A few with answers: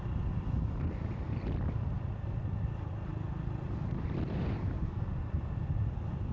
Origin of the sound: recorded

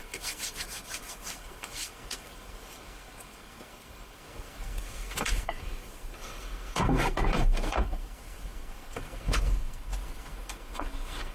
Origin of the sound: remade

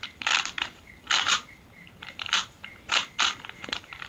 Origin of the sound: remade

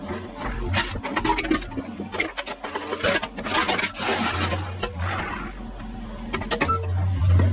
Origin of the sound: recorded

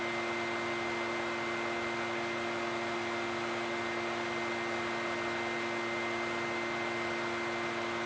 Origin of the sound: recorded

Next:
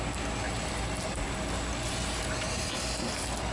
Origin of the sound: recorded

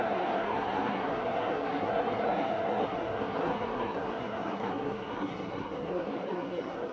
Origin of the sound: remade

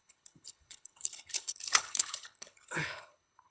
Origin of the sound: remade